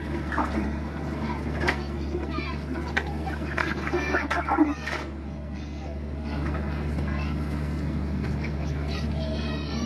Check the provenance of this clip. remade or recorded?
remade